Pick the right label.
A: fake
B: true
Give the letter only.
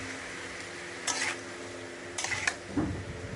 B